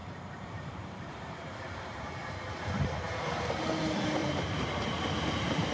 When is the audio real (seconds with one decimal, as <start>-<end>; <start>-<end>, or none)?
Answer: 3.4-4.2